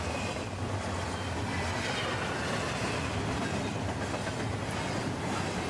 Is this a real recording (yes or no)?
yes